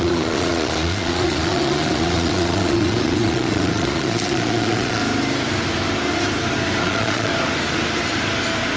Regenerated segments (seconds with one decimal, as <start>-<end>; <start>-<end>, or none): 0.0-5.0; 6.8-7.3